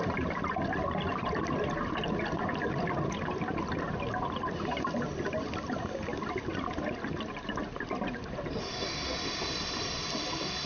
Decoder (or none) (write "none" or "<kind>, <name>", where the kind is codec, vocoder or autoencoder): none